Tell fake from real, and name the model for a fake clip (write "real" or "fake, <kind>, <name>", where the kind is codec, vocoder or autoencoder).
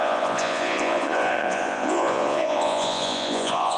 fake, vocoder, Vocos